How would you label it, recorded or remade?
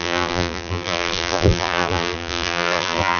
remade